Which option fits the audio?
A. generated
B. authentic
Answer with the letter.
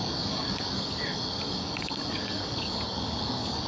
A